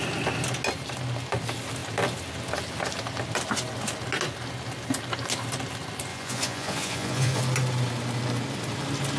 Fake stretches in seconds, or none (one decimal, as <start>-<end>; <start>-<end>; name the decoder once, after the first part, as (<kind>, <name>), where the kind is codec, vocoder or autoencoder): 6.1-7.4 (vocoder, Vocos)